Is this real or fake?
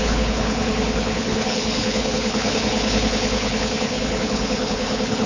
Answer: fake